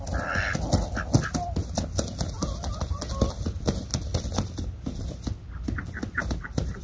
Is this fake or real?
real